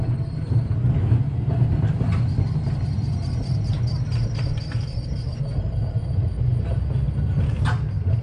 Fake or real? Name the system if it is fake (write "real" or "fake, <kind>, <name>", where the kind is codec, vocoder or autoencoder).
real